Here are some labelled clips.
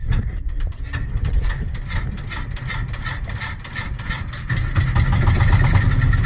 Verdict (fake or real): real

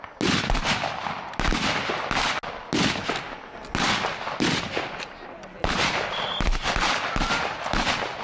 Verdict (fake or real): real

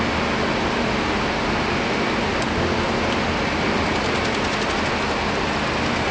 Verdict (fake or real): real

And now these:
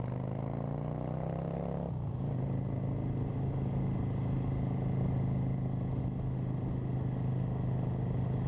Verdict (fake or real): real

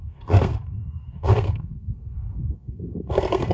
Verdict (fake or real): fake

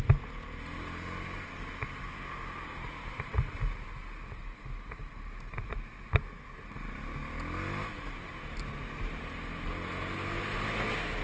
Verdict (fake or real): real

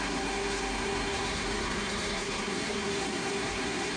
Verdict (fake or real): fake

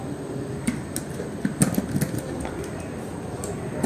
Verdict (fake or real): real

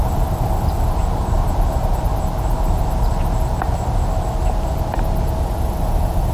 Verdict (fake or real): real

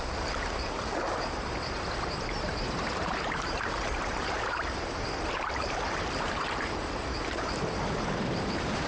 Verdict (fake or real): fake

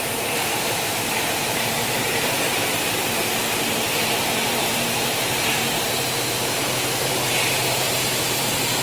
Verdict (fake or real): fake